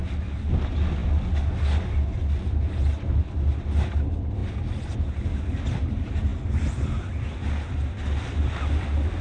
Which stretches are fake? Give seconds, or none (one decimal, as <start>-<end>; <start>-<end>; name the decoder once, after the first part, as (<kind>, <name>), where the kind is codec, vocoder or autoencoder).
none